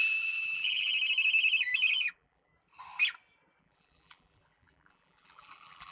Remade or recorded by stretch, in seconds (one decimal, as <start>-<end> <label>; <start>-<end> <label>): 0.0-0.9 remade; 0.9-2.1 recorded; 2.1-2.5 remade; 2.5-3.6 recorded; 3.6-5.9 remade